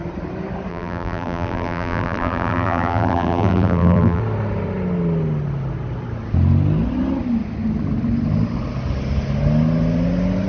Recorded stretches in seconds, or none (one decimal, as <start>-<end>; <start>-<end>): 0.0-0.7; 4.2-10.5